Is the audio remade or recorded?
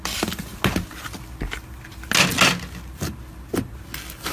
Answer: recorded